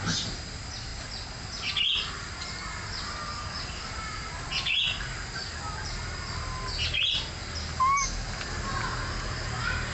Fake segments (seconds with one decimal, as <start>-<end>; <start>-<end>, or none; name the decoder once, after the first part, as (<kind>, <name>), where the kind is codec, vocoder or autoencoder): none